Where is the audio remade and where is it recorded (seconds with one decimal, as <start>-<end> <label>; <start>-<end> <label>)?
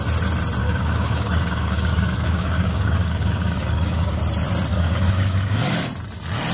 0.0-0.6 recorded; 0.6-4.2 remade; 4.2-4.7 recorded; 4.7-5.7 remade; 5.7-6.5 recorded